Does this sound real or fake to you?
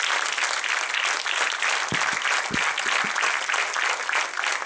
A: real